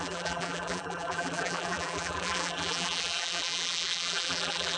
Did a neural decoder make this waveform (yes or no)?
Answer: yes